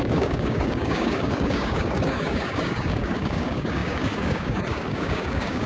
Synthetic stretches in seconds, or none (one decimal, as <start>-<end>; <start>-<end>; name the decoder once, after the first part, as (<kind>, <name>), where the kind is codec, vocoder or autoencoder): 0.0-5.7 (codec, DAC)